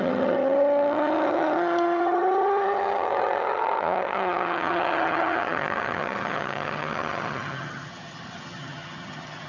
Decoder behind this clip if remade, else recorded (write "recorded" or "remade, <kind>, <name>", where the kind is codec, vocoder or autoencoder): remade, vocoder, HiFi-GAN